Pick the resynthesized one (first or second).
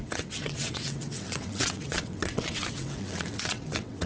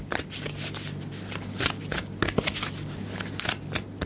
first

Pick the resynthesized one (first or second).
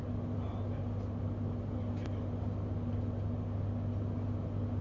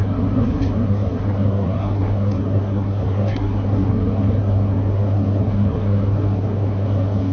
second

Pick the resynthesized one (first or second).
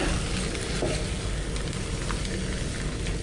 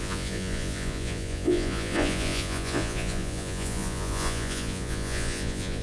second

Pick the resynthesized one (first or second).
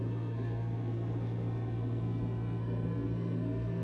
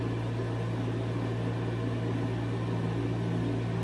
first